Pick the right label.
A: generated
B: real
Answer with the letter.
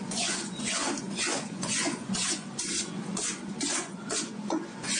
A